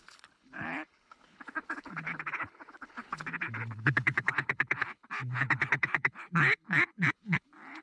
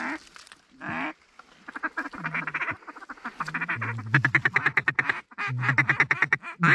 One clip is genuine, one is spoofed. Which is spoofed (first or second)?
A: first